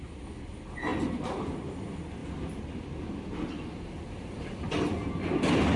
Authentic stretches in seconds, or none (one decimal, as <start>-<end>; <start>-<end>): 0.0-5.8